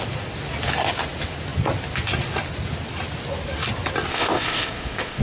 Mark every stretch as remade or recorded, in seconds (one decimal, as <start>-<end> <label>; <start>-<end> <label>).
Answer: 0.0-4.1 recorded; 4.1-5.2 remade